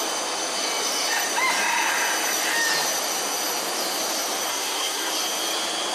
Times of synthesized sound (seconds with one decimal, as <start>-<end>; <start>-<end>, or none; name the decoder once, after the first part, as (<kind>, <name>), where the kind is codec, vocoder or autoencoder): 4.5-5.1 (codec, SNAC)